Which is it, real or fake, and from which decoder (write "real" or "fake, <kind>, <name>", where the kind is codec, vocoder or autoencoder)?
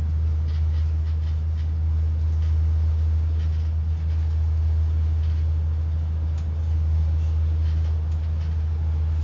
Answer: real